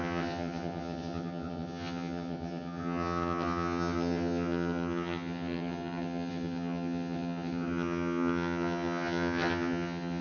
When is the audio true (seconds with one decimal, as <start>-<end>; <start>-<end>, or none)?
none